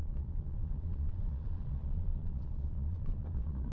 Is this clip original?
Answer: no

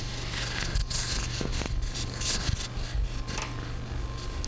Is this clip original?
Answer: yes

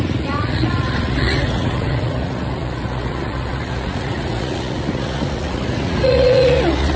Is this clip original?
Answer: no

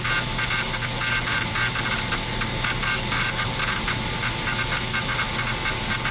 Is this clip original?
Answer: yes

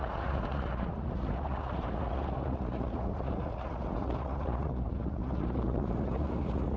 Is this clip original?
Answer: no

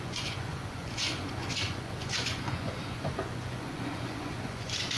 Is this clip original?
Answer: no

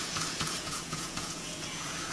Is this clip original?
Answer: no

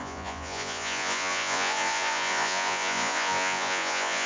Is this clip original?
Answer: no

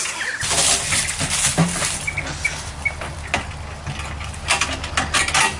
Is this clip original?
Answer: yes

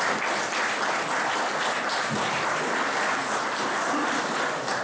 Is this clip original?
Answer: yes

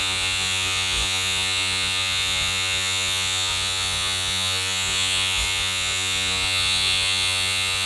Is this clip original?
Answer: no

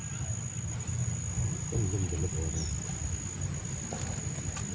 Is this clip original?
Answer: yes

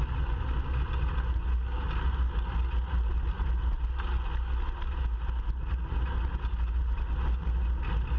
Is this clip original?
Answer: yes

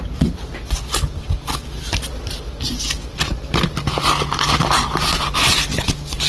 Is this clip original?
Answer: yes